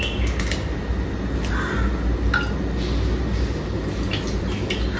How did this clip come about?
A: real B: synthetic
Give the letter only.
A